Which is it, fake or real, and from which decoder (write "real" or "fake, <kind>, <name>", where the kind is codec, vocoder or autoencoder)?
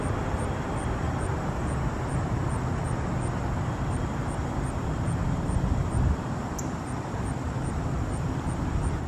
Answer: real